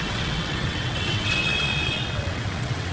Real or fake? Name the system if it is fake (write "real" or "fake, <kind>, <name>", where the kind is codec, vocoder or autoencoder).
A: fake, vocoder, WaveNeXt